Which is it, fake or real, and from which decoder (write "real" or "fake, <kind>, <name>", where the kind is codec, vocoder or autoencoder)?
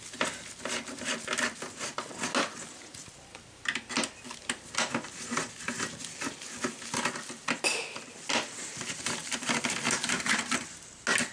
real